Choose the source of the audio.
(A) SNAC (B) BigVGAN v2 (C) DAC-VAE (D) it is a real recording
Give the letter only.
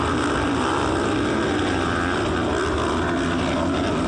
D